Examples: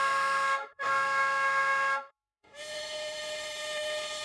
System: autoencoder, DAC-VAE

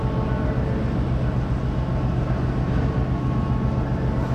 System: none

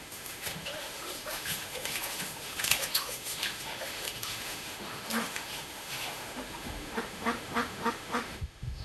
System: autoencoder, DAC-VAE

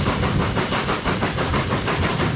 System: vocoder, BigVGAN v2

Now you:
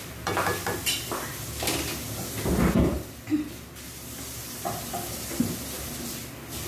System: none